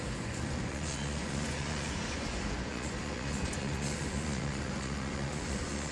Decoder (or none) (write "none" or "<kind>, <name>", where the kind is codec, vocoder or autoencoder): vocoder, Vocos